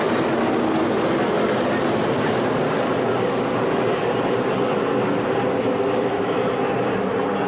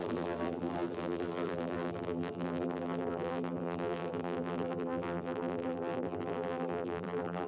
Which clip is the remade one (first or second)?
second